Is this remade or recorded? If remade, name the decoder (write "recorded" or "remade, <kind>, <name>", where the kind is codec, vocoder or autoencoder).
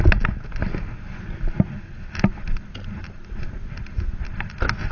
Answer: recorded